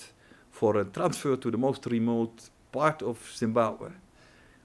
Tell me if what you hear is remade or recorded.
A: recorded